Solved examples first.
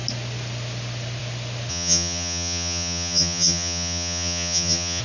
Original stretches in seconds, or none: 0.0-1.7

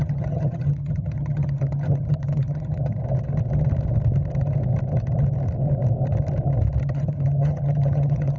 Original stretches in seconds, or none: 3.0-6.8

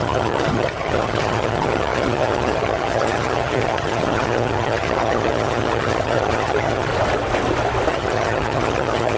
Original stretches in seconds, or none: 6.9-7.9